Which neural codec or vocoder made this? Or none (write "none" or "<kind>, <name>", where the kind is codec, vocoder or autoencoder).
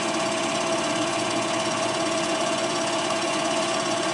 vocoder, Vocos